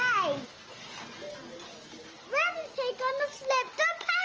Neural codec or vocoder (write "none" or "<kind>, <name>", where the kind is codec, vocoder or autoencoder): none